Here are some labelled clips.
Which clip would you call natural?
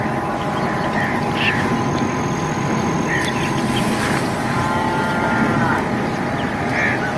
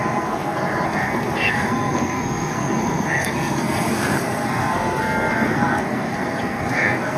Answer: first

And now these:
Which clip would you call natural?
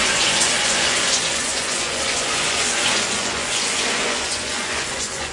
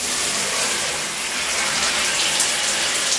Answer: second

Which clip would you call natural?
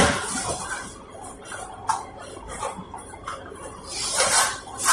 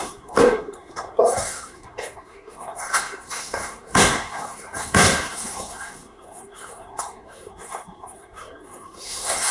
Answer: first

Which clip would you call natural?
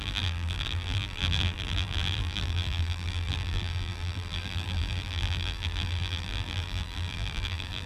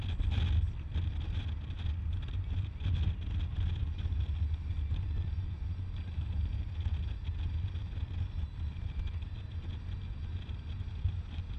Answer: second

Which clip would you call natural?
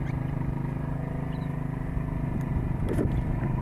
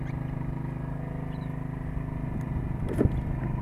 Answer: second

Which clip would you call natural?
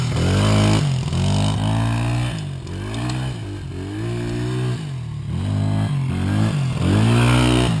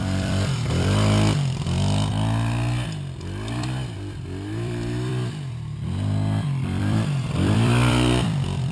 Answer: first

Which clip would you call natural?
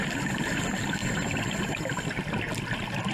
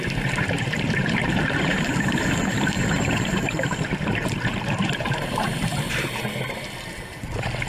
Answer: first